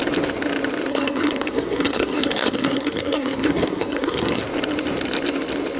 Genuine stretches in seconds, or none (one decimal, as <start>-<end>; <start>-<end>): 0.0-0.9; 4.4-5.8